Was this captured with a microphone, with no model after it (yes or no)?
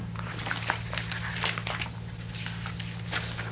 yes